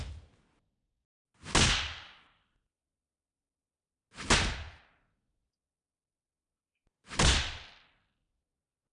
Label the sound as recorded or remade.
recorded